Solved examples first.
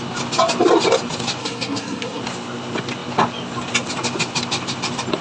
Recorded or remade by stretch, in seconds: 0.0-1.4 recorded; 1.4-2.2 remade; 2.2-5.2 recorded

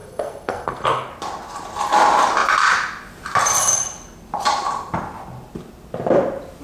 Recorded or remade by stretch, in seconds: 0.0-1.1 remade; 1.1-6.6 recorded

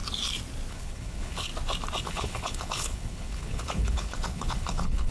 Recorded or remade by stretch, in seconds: 0.0-0.7 recorded; 0.7-1.5 remade; 1.5-2.0 recorded; 2.0-5.1 remade

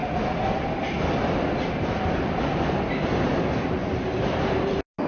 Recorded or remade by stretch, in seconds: 0.0-5.1 recorded

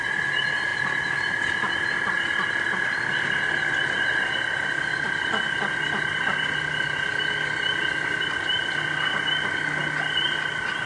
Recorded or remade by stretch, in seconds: 0.0-10.9 recorded

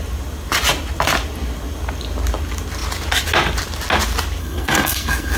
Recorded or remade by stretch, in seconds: 0.0-4.4 recorded; 4.4-5.4 remade